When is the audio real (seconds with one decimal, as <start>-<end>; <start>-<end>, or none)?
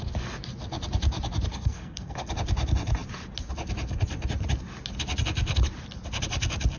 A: 0.0-1.5; 2.3-6.8